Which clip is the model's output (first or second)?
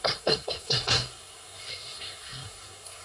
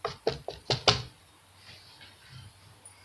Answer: first